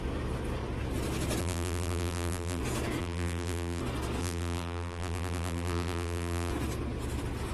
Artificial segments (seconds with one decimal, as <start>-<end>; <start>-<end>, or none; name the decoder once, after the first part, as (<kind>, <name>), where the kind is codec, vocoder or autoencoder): 1.4-2.6 (vocoder, BigVGAN v2); 3.0-3.8; 4.2-6.5